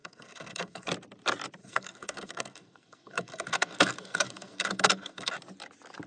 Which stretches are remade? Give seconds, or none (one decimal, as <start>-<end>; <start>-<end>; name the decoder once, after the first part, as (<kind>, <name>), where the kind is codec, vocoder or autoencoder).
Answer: 0.0-0.9 (codec, SNAC); 1.6-5.3